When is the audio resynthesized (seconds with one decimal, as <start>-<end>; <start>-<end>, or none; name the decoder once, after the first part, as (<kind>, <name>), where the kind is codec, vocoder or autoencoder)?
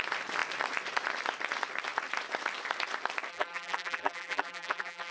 3.3-5.1 (vocoder, BigVGAN v2)